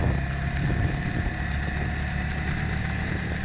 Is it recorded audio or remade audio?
recorded